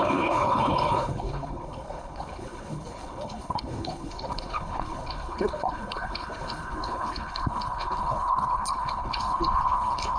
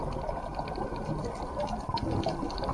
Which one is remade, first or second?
first